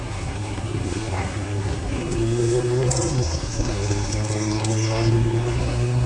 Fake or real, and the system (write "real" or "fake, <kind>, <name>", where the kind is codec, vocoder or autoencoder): fake, codec, SNAC